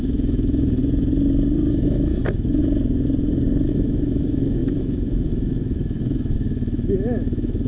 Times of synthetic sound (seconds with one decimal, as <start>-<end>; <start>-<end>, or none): 0.0-0.8; 1.7-2.6; 3.7-7.7